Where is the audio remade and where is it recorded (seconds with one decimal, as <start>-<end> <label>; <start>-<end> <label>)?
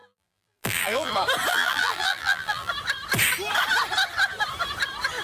0.0-1.1 remade; 1.1-1.5 recorded; 1.5-2.7 remade; 2.7-5.2 recorded